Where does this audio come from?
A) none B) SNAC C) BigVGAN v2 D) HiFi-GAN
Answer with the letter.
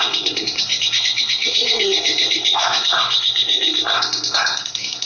B